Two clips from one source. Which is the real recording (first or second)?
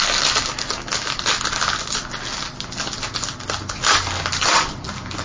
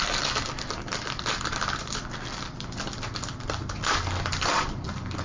first